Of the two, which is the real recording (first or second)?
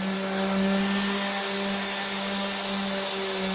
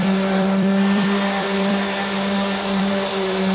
first